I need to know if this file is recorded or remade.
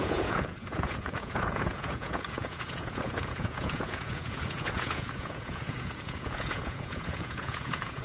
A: remade